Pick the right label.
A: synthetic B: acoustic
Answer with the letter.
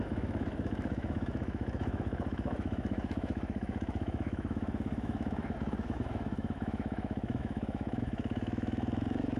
A